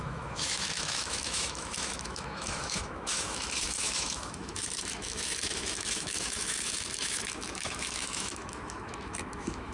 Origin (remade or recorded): remade